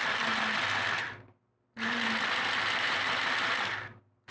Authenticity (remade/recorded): recorded